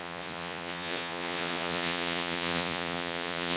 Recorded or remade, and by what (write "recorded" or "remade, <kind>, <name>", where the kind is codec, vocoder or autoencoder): remade, vocoder, Vocos